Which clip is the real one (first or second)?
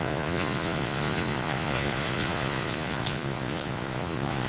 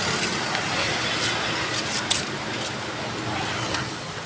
second